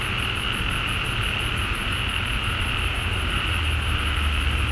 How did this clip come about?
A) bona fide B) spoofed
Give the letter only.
A